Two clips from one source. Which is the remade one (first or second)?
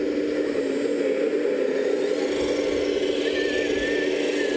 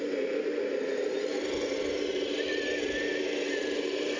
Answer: second